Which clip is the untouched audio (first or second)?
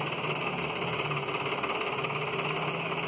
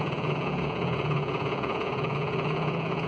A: first